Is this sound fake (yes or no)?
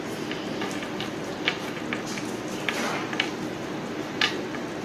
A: no